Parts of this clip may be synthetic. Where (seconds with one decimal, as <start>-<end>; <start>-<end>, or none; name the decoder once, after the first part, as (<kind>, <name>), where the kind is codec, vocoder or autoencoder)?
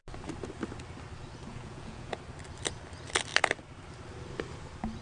1.5-2.2 (vocoder, Vocos)